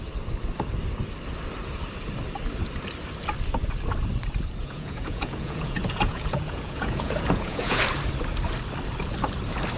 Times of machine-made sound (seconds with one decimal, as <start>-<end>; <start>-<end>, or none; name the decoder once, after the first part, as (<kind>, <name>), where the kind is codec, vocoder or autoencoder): 4.6-7.8 (vocoder, Vocos)